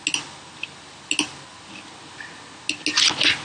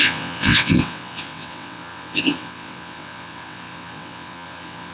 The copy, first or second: second